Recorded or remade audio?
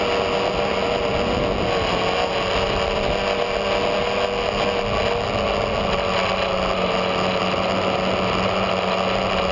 recorded